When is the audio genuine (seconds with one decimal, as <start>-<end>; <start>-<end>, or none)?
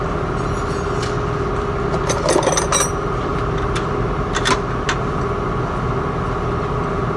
0.0-7.2